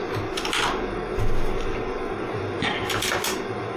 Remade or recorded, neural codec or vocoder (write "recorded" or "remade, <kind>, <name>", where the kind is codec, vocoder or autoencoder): recorded